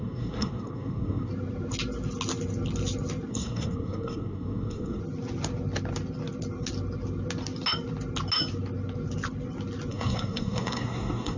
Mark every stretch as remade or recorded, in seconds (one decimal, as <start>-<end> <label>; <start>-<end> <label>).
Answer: 0.0-1.3 remade; 1.3-3.3 recorded; 3.3-5.0 remade; 5.0-9.9 recorded; 9.9-11.4 remade